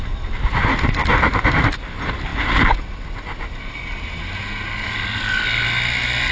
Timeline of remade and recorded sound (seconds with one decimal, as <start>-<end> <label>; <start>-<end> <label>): 0.0-6.3 recorded